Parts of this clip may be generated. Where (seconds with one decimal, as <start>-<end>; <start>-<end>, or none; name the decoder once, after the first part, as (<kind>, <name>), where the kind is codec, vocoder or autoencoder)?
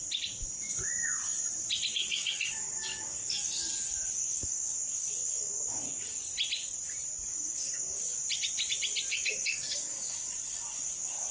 2.0-6.2 (codec, DAC); 7.3-8.2; 9.1-11.3